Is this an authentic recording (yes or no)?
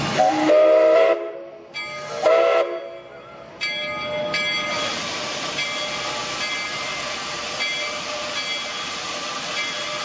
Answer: yes